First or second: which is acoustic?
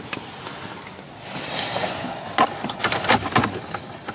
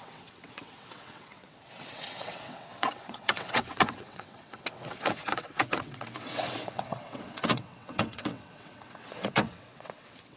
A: first